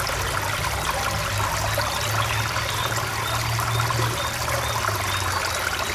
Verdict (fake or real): real